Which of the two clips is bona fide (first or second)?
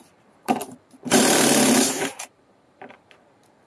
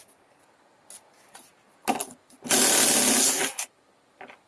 second